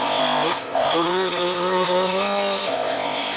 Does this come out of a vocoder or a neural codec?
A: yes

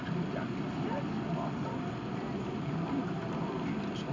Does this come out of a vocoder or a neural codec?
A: no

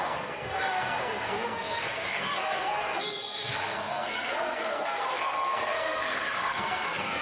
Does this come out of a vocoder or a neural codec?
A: yes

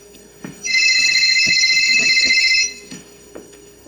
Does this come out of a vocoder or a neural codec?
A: yes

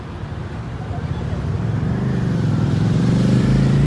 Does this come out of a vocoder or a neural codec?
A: yes